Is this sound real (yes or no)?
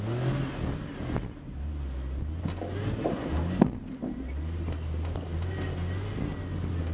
yes